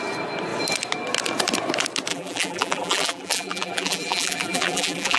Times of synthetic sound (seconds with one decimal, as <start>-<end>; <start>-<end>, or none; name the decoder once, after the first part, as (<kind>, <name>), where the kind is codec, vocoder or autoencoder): 2.1-5.2 (vocoder, BigVGAN v2)